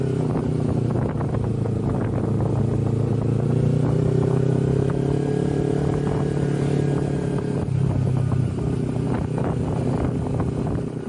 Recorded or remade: recorded